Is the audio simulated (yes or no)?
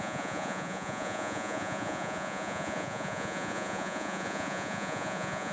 yes